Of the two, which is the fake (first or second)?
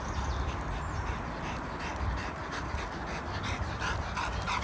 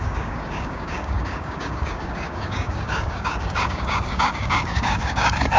second